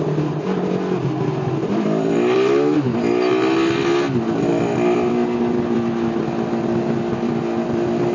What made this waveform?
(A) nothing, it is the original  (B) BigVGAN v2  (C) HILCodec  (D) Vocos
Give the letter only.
A